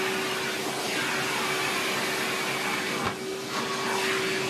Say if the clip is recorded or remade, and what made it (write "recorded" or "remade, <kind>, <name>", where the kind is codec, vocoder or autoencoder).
recorded